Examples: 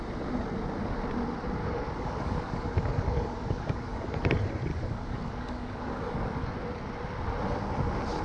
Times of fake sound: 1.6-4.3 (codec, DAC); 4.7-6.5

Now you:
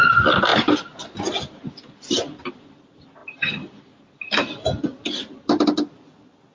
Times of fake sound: none

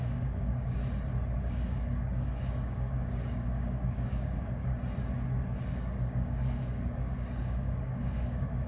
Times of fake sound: 0.0-0.8 (codec, DAC); 1.4-4.7; 5.7-8.7

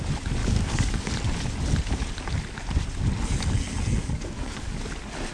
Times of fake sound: 0.4-1.1 (codec, DAC); 4.0-4.8

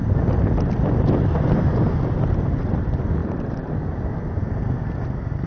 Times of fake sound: none